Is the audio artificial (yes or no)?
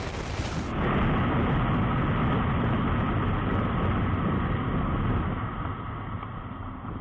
no